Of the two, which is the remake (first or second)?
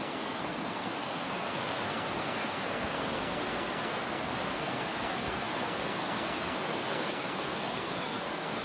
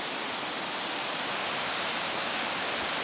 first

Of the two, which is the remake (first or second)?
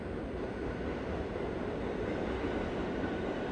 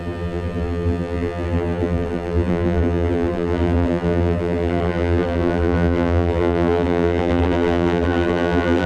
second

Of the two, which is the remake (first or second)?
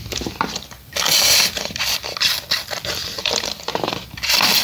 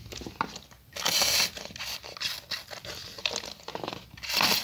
first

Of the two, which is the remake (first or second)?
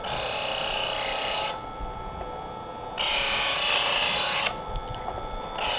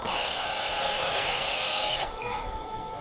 second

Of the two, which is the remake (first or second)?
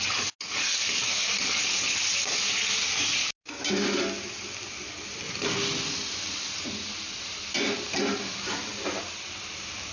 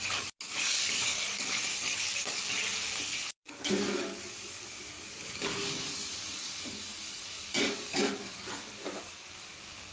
second